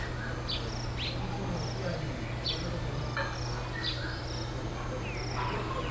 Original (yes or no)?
yes